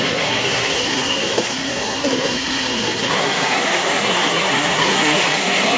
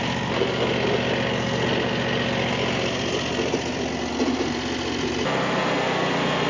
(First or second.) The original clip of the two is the second